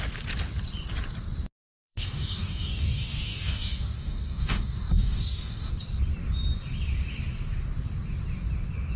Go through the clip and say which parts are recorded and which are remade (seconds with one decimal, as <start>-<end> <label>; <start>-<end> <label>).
0.0-1.8 recorded; 1.8-5.7 remade; 5.7-9.0 recorded